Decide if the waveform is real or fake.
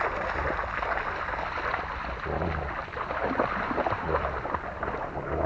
real